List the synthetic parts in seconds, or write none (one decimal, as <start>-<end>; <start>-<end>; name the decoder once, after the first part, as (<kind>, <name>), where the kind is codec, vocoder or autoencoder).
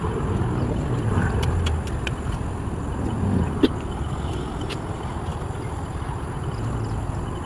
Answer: none